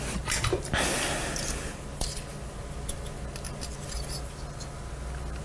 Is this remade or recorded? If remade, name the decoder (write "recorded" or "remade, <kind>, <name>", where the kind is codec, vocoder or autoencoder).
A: recorded